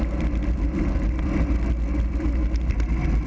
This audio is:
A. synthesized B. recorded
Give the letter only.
B